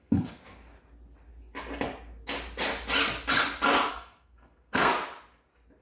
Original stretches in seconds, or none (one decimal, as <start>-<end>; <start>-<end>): 0.4-3.9; 4.9-5.8

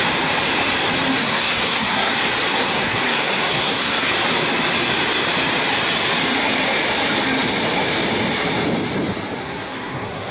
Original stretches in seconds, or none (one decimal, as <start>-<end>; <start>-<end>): 0.0-1.2; 2.1-2.5; 4.1-9.4

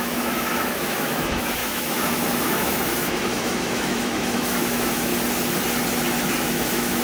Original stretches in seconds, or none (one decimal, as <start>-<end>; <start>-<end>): 5.1-6.4

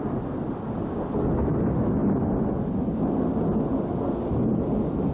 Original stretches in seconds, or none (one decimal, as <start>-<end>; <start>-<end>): 0.0-5.1